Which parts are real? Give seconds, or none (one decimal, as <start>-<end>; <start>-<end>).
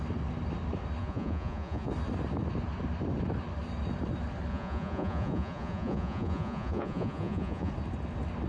0.0-1.0; 1.9-4.5; 7.7-8.5